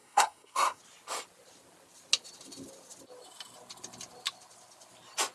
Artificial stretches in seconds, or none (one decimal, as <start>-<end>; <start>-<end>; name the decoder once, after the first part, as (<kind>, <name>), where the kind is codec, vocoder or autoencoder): 0.0-0.8 (codec, SNAC)